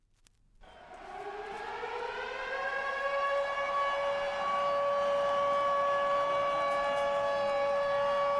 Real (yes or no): yes